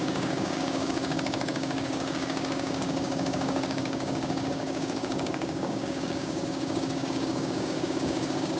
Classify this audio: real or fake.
fake